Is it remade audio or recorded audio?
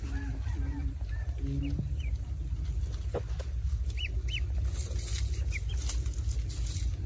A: recorded